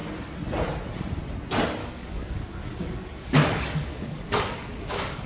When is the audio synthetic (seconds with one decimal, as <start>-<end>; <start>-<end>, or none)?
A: 1.8-5.3